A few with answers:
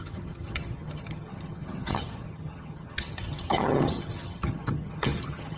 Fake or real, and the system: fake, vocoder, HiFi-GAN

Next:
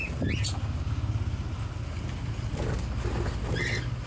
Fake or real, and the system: real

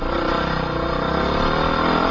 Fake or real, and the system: real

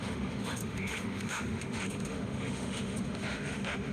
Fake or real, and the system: fake, autoencoder, DAC-VAE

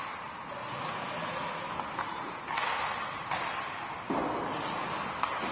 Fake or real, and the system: real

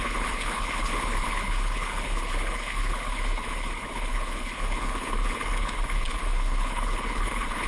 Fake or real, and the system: fake, codec, HILCodec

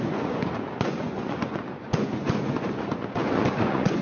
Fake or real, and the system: fake, vocoder, Vocos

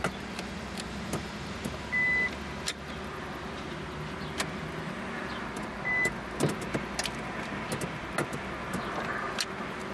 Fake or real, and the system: real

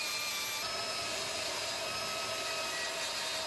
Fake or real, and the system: real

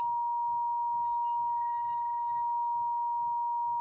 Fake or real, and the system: fake, autoencoder, DAC-VAE